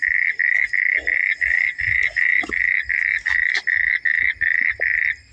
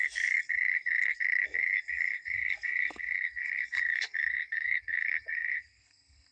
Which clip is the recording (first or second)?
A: first